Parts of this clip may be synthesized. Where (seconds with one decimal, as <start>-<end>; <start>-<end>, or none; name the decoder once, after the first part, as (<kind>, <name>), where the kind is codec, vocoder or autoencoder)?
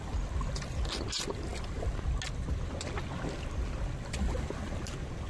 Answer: none